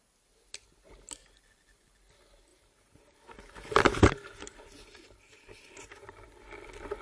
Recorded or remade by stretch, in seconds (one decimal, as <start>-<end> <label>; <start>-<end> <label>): 0.0-2.5 recorded; 2.5-6.4 remade; 6.4-7.0 recorded